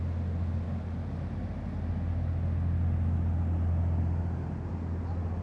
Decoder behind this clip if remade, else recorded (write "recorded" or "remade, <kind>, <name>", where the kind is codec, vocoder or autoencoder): recorded